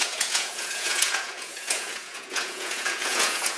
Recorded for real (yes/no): no